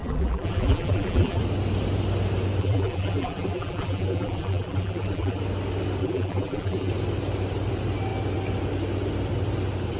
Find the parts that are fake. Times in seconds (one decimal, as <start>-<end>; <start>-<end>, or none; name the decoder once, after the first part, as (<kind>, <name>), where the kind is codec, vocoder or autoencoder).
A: 0.0-1.4 (vocoder, BigVGAN v2); 2.6-5.4; 6.0-6.9